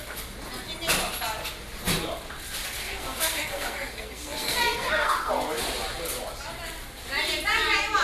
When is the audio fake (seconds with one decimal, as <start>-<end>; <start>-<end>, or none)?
2.8-5.3